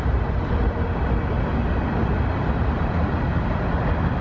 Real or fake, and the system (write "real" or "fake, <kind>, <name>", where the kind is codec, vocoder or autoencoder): real